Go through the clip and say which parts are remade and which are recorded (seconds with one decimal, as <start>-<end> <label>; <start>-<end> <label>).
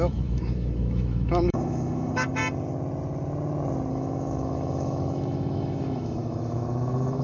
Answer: 0.0-2.4 remade; 2.4-3.9 recorded; 3.9-7.2 remade